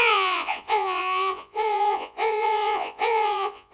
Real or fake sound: fake